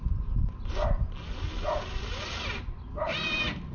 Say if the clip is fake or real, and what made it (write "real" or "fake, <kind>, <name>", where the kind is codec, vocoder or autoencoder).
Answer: real